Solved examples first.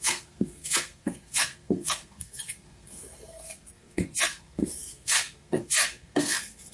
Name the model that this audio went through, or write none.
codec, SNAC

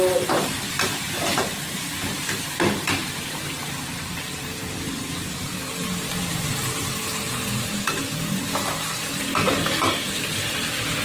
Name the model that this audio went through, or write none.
vocoder, BigVGAN v2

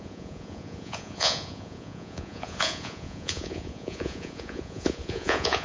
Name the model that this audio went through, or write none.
vocoder, Vocos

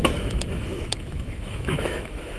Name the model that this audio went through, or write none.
autoencoder, DAC-VAE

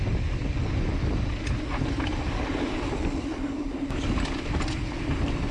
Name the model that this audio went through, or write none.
none